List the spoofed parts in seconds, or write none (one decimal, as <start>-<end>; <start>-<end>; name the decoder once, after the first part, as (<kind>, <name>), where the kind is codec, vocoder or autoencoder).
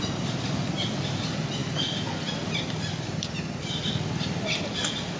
none